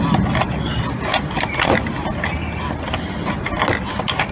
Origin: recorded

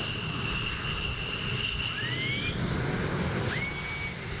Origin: recorded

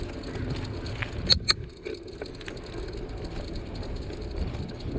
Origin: recorded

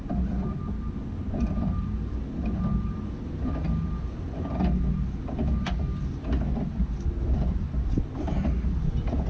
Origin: recorded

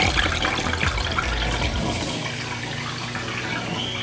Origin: recorded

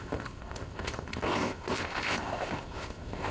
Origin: remade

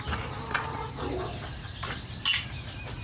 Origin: recorded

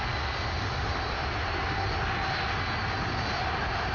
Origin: recorded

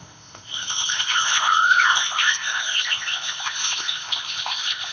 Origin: remade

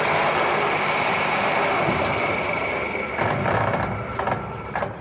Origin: recorded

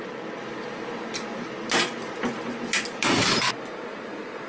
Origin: recorded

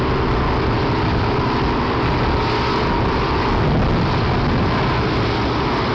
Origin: recorded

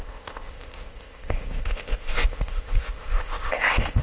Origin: remade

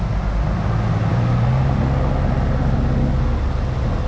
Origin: recorded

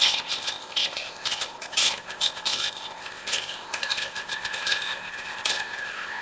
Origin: remade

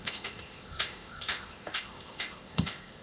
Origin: remade